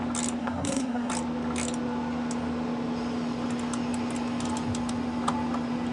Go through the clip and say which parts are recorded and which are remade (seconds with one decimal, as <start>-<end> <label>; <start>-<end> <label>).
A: 0.0-0.4 recorded; 0.4-1.1 remade; 1.1-5.9 recorded